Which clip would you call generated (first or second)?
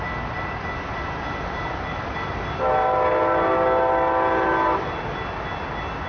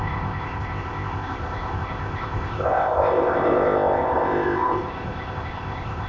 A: second